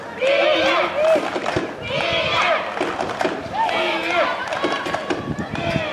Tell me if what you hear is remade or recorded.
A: recorded